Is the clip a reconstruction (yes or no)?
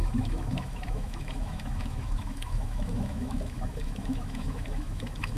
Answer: yes